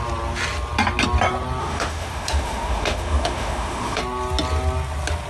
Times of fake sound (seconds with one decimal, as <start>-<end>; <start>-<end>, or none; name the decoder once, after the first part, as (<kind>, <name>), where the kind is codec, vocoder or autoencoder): 1.6-4.0 (autoencoder, DAC-VAE)